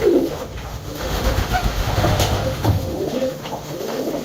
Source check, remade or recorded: remade